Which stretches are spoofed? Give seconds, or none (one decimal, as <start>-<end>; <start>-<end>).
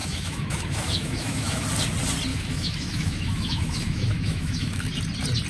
0.0-1.6; 2.3-5.0